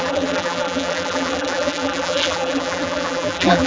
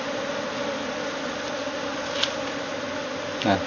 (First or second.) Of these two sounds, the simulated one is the first